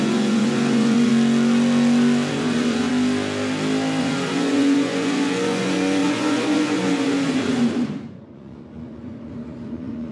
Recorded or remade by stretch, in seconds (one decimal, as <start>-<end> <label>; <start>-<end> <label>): 0.0-1.1 remade; 1.1-2.3 recorded; 2.3-2.9 remade; 2.9-4.0 recorded; 4.0-10.1 remade